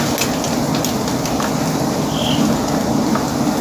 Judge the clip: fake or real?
real